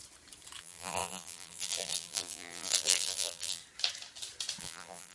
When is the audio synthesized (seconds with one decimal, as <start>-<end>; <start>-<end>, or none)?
0.6-3.6; 4.6-5.1